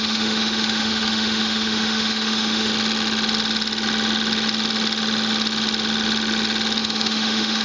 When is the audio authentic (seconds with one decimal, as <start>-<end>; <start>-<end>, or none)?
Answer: 2.7-6.8